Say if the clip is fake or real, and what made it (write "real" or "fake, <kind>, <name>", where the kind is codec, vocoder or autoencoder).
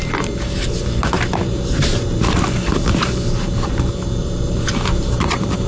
fake, vocoder, BigVGAN v2